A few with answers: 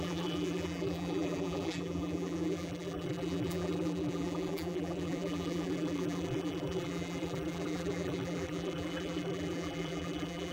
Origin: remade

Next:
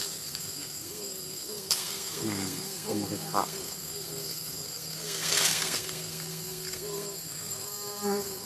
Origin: remade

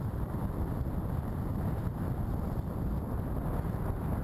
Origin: recorded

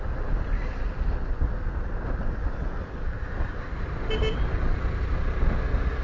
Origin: recorded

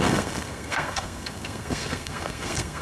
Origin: remade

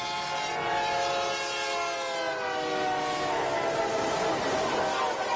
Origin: recorded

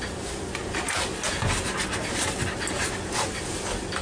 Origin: recorded